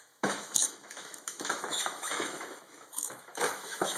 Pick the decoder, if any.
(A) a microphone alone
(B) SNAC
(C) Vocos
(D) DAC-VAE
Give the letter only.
D